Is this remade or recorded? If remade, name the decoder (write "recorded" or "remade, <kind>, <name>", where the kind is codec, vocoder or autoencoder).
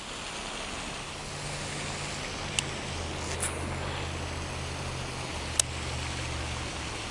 recorded